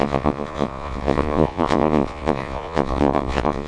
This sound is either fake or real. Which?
fake